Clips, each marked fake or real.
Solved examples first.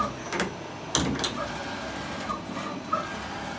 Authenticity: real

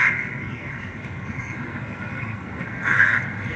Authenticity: fake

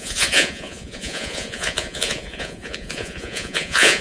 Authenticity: fake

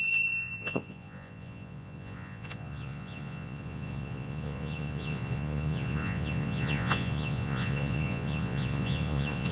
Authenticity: fake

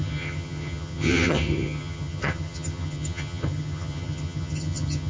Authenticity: fake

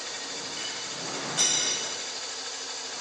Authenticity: real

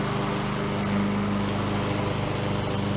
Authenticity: real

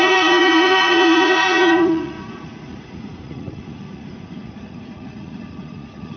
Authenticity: fake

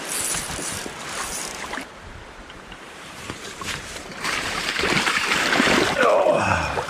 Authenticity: fake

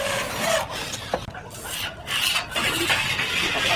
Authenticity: real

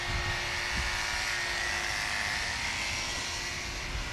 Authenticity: real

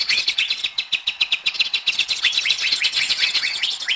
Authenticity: fake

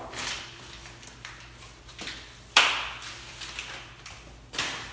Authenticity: real